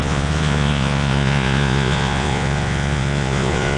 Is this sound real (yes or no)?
no